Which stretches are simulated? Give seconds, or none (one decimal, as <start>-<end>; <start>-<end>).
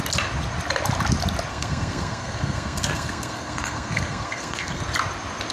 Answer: 1.5-4.8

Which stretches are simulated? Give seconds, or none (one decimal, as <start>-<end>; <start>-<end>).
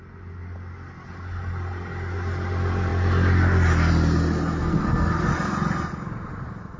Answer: 4.6-5.3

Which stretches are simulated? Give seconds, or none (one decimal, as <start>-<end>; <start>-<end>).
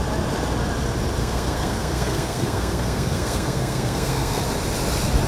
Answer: 1.2-4.4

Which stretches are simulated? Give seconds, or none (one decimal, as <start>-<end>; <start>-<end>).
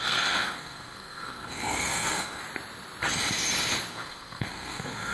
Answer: 0.0-2.4; 3.9-5.1